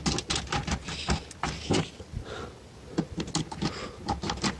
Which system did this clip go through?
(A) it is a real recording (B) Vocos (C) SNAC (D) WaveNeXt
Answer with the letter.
A